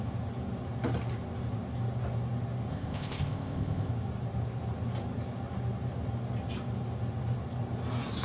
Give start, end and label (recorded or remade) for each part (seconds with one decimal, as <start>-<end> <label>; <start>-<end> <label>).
0.0-2.7 recorded; 2.7-3.9 remade; 3.9-8.2 recorded